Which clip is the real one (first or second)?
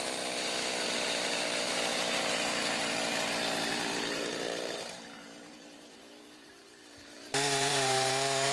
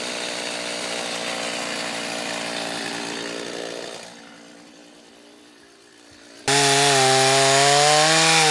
second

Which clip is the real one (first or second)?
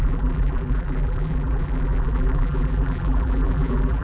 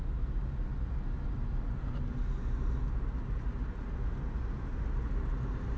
second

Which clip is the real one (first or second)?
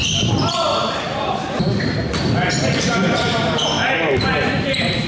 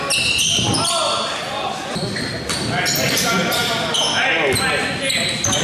second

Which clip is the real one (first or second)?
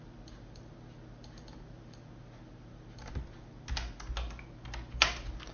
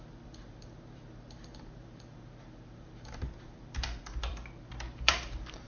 first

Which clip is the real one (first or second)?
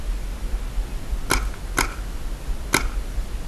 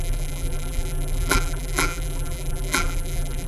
first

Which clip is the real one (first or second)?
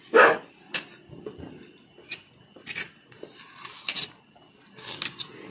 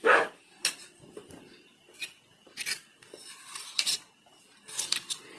first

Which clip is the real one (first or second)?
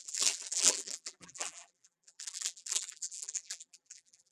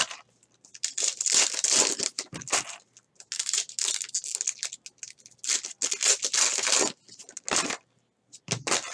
second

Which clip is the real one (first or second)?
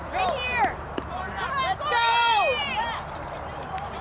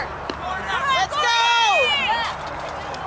second